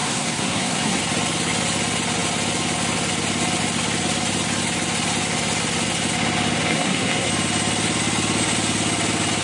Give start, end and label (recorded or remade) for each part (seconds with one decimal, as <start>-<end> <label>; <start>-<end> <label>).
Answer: 0.0-1.0 remade; 1.0-6.7 recorded; 6.7-7.3 remade; 7.3-9.4 recorded